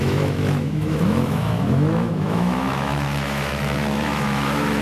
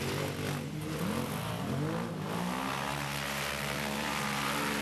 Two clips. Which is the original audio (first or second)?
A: second